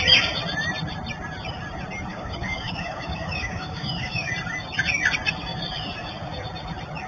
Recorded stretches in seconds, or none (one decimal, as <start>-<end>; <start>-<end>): 0.0-2.1; 4.3-7.1